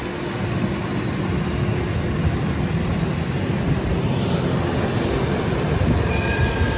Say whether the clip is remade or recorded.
recorded